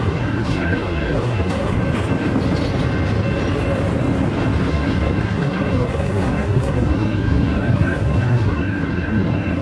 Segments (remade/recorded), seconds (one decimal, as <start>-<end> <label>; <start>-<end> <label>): 0.0-1.8 remade; 1.8-4.7 recorded; 4.7-9.6 remade